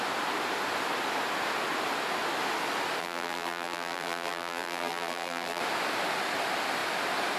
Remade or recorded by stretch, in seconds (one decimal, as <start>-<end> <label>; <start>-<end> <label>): 0.0-3.0 recorded; 3.0-5.6 remade; 5.6-7.4 recorded